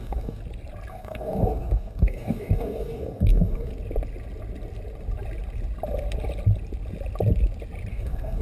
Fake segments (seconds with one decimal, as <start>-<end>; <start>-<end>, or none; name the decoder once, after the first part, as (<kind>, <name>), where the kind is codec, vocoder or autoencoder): 0.0-0.4 (codec, DAC); 0.9-3.7; 7.9-8.4